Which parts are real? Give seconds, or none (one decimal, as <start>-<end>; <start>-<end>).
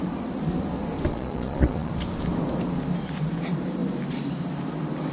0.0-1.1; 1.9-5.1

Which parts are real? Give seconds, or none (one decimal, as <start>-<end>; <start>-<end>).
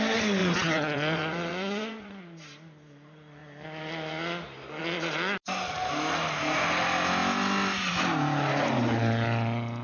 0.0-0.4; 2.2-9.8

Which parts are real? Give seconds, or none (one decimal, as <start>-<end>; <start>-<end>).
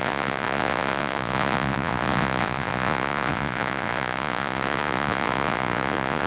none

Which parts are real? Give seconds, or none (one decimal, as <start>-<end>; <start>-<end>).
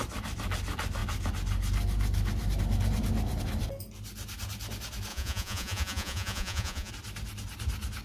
0.0-5.1; 6.9-8.0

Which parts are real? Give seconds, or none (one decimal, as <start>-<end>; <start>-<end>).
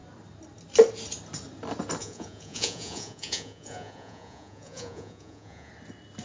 0.0-2.0; 5.7-6.2